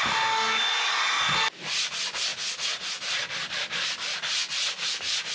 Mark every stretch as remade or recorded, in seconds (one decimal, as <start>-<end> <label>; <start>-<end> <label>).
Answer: 0.0-5.3 recorded